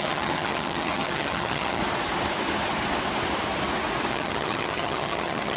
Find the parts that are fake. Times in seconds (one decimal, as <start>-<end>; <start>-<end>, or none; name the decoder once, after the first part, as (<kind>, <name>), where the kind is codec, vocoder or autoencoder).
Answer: 0.0-1.8 (vocoder, HiFi-GAN); 4.1-5.6